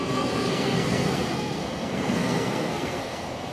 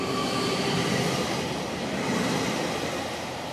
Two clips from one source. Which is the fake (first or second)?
first